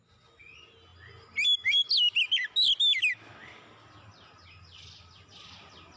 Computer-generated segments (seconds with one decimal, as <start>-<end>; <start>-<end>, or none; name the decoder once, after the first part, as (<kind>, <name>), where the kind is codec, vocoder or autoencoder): none

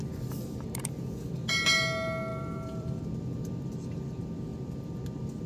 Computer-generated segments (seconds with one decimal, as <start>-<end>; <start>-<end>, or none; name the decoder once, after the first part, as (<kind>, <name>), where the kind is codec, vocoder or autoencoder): 2.3-3.0 (vocoder, BigVGAN v2)